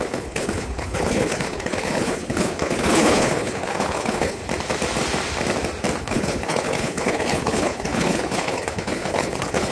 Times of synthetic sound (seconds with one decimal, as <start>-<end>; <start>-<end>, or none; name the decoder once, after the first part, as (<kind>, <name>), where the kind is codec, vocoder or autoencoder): 0.0-4.4 (codec, HILCodec); 6.0-9.7